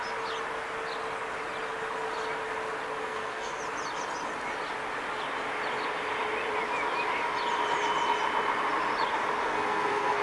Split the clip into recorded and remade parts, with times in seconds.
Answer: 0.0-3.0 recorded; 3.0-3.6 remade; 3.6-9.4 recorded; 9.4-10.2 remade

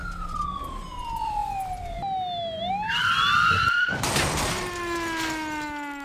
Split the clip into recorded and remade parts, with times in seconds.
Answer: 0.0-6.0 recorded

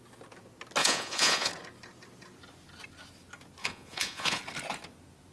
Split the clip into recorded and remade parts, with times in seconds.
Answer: 0.0-0.8 recorded; 0.8-1.5 remade; 1.5-3.6 recorded; 3.6-4.4 remade; 4.4-5.3 recorded

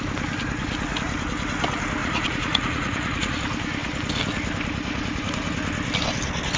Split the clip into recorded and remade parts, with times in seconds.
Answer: 0.0-2.0 recorded; 2.0-3.3 remade; 3.3-6.6 recorded

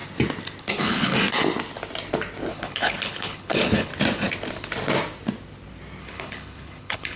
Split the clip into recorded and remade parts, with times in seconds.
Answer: 0.0-0.6 recorded; 0.6-1.1 remade; 1.1-2.5 recorded; 2.5-3.9 remade; 3.9-6.0 recorded; 6.0-7.2 remade

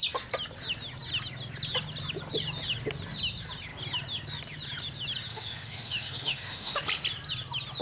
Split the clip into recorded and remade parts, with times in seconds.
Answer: 0.0-5.3 recorded; 5.3-6.8 remade; 6.8-7.8 recorded

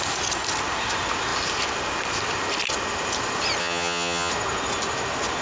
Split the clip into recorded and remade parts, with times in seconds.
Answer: 0.0-3.6 recorded; 3.6-4.3 remade; 4.3-5.4 recorded

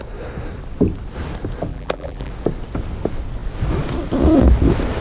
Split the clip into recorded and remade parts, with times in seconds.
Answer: 0.0-1.7 recorded; 1.7-2.3 remade; 2.3-5.0 recorded